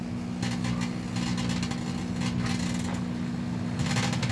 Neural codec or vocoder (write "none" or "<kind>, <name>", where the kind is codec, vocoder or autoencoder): none